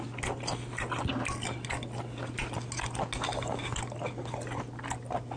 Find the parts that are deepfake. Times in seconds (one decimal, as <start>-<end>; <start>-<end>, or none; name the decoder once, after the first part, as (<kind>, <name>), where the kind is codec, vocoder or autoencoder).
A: none